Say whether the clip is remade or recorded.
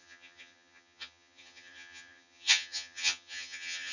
remade